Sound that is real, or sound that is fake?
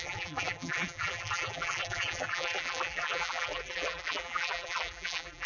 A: fake